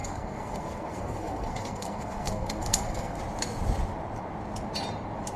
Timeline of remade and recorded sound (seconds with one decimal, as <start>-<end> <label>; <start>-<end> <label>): 0.0-3.2 remade; 3.2-5.4 recorded